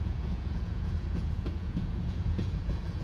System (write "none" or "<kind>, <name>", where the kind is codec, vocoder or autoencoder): vocoder, Vocos